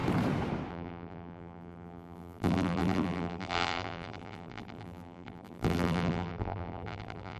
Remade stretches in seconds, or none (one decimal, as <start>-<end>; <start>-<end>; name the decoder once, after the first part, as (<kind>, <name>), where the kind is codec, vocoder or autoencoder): 0.7-7.4 (vocoder, BigVGAN v2)